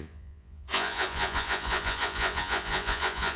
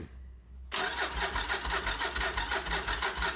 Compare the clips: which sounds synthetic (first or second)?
first